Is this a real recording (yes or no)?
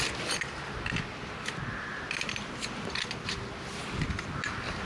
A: yes